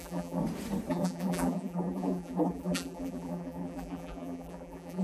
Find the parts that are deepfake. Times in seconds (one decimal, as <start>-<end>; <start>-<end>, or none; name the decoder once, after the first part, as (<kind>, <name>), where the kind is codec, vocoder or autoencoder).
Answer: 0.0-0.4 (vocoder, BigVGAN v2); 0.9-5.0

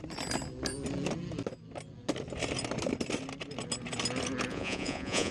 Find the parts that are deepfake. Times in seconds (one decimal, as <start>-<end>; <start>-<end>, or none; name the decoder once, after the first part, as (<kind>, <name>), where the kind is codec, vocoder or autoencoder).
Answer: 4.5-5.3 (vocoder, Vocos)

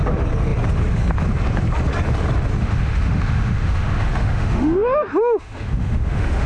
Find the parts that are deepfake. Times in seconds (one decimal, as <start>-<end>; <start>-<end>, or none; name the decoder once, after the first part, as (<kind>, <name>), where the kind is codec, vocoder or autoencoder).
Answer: 2.6-6.5 (autoencoder, DAC-VAE)

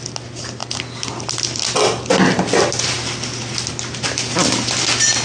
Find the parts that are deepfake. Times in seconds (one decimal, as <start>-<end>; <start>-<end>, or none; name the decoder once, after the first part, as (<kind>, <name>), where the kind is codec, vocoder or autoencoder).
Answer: none

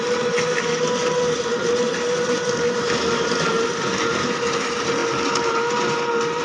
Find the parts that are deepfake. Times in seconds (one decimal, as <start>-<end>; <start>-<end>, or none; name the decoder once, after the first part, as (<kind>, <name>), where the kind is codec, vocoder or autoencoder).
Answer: none

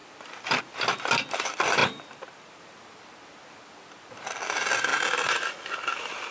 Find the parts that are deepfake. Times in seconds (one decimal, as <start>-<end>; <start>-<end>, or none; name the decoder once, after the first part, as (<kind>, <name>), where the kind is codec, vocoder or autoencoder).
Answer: 0.0-0.6 (vocoder, BigVGAN v2); 1.8-2.6; 4.9-5.5

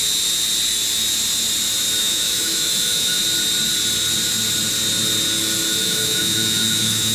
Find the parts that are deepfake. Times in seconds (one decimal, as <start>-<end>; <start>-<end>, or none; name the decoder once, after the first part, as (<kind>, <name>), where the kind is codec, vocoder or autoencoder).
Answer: 2.0-3.2 (autoencoder, DAC-VAE); 5.8-7.1